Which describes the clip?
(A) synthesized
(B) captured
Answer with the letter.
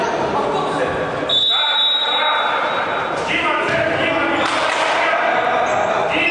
B